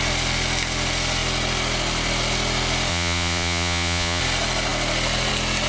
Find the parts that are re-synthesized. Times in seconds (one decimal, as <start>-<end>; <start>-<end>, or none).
2.9-4.2